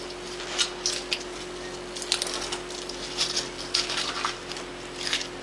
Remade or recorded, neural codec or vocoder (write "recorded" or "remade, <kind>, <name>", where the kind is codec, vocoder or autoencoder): recorded